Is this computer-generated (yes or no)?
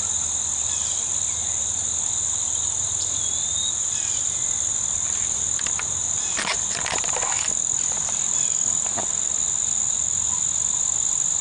no